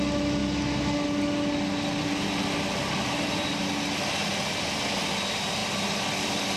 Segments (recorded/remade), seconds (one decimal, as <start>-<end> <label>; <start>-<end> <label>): 0.0-6.6 recorded